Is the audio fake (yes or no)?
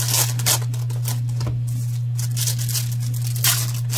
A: no